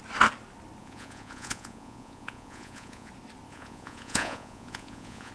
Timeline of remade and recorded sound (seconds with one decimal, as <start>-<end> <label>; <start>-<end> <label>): 0.0-0.8 recorded; 0.8-3.1 remade; 3.1-3.5 recorded; 3.5-5.3 remade